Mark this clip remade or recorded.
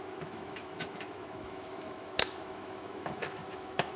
remade